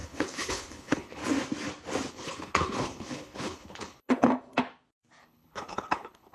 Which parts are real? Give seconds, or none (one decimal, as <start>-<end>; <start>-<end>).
1.2-2.1; 4.3-5.2